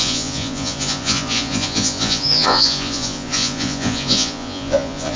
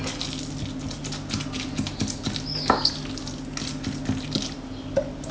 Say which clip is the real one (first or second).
second